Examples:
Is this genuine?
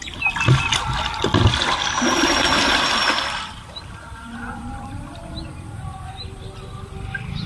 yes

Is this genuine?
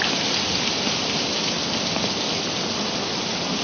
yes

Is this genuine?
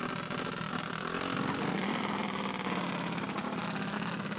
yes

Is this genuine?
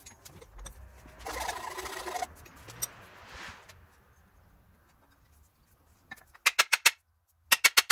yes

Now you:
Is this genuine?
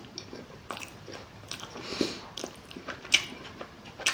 no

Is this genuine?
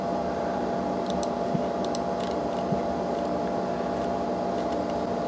yes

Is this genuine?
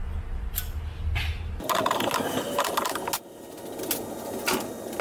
yes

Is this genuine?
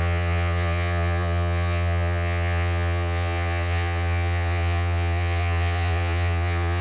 no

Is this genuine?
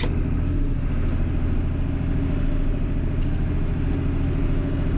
yes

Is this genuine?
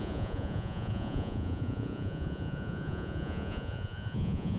no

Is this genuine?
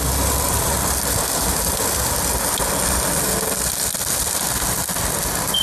yes